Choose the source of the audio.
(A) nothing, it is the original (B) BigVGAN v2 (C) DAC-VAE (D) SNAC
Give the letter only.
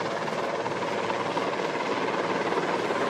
A